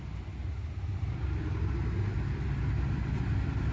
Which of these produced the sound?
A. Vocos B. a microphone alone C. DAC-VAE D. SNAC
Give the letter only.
B